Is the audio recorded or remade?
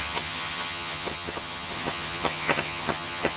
remade